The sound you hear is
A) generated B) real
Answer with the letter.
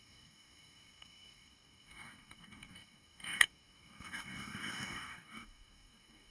A